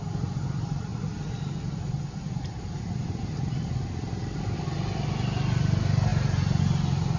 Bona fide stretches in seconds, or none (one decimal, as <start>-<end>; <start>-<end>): 0.0-7.2